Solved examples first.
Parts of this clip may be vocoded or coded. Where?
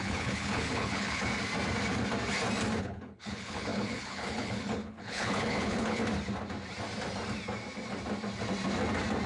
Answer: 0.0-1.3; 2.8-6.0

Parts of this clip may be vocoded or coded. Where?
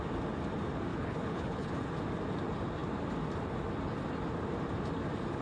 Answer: 0.9-1.7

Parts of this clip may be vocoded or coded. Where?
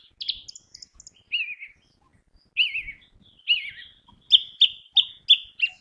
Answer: none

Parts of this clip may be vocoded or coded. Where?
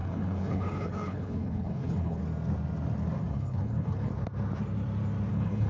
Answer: 0.0-2.2; 3.3-4.1; 5.3-5.7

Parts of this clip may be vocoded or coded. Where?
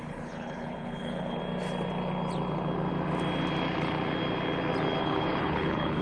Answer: 0.0-1.4; 5.0-6.0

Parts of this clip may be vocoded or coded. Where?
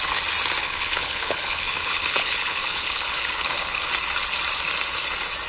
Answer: 0.6-3.9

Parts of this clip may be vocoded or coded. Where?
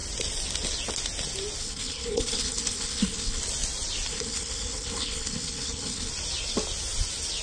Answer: 1.6-3.4; 4.1-6.1